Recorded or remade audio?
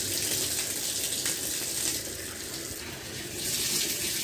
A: recorded